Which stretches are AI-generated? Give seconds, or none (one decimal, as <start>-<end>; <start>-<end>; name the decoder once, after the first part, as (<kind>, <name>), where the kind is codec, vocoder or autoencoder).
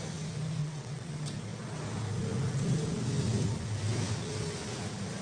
0.6-1.1 (vocoder, WaveNeXt)